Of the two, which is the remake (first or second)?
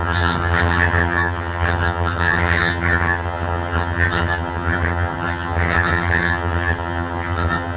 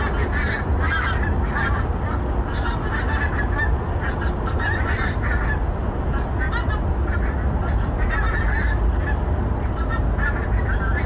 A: first